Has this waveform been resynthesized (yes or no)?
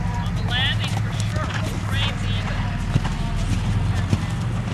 no